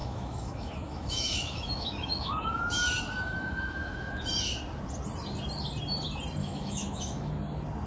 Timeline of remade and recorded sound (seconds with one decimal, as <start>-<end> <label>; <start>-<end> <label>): 0.0-4.2 remade; 4.2-6.4 recorded; 6.4-7.3 remade; 7.3-7.9 recorded